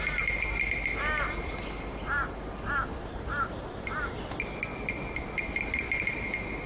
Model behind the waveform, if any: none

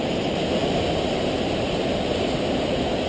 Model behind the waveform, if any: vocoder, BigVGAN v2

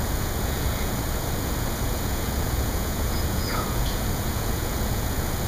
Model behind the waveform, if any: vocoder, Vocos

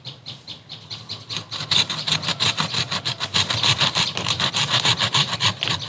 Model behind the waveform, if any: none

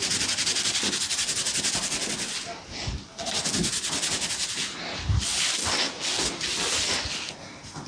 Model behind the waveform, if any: none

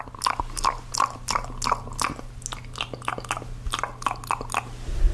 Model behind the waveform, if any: none